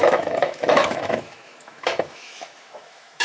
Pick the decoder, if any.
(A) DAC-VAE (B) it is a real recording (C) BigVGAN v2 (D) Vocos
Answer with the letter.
A